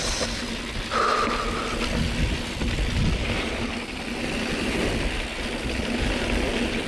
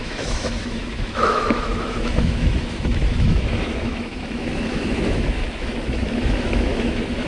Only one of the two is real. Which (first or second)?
first